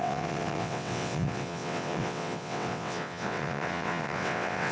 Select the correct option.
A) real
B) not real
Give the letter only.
B